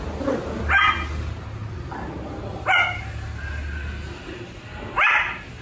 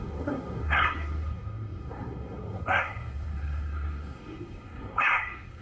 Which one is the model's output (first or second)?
second